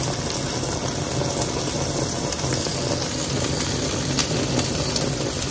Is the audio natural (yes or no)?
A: yes